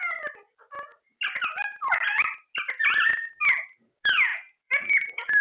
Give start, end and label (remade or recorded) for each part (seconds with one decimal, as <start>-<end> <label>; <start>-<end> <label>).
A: 0.0-4.3 recorded; 4.3-5.4 remade